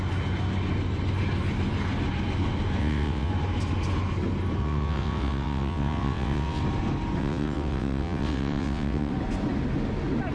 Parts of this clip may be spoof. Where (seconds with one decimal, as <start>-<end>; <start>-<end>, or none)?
2.8-3.3; 4.6-6.6; 7.2-9.1